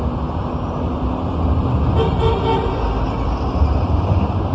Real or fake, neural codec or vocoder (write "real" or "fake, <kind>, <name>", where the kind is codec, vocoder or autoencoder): real